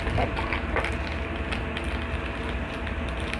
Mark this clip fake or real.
real